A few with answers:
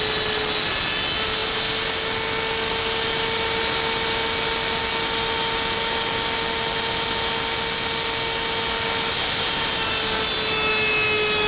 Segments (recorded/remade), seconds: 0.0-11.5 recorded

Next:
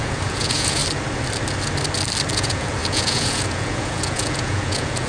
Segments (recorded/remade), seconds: 0.0-0.8 remade; 0.8-2.3 recorded; 2.3-5.1 remade

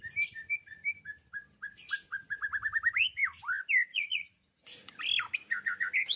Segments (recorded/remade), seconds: 0.0-1.7 recorded; 1.7-2.3 remade; 2.3-3.9 recorded; 3.9-5.0 remade; 5.0-6.2 recorded

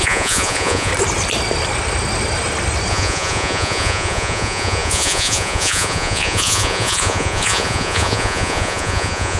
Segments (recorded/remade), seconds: 0.0-0.9 remade; 0.9-2.9 recorded; 2.9-9.4 remade

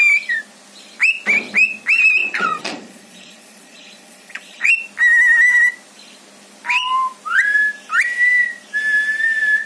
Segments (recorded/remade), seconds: 0.0-2.2 recorded; 2.2-4.7 remade; 4.7-9.7 recorded

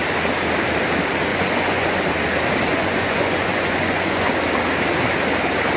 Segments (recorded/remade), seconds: 0.0-1.3 recorded; 1.3-2.0 remade; 2.0-2.7 recorded; 2.7-4.3 remade; 4.3-5.8 recorded

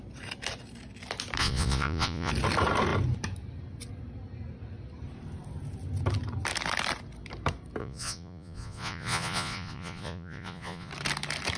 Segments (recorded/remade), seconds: 0.0-1.4 recorded; 1.4-2.3 remade; 2.3-7.8 recorded; 7.8-10.9 remade; 10.9-11.6 recorded

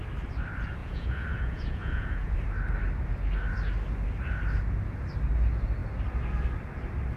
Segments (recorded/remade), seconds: 0.0-0.8 recorded; 0.8-2.3 remade; 2.3-7.2 recorded